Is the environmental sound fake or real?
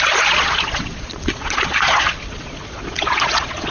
fake